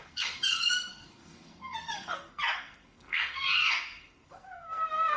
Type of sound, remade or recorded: remade